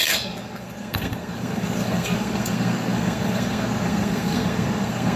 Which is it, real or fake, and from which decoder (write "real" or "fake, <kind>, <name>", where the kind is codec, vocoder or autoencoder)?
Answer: fake, codec, SNAC